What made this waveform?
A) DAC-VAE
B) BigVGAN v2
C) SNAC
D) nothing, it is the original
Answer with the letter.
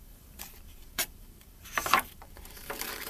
B